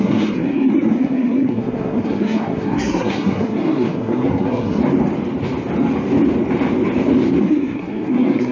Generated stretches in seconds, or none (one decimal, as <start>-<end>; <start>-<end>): 0.0-4.8; 7.4-8.5